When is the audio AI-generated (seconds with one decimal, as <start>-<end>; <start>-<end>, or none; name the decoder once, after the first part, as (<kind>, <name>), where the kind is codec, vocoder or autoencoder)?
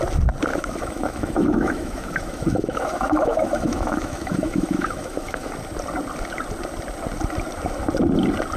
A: 0.5-5.5 (autoencoder, DAC-VAE)